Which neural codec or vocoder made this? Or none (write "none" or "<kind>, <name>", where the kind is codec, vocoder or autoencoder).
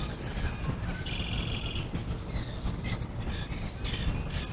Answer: none